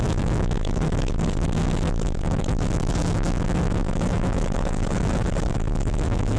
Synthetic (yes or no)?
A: yes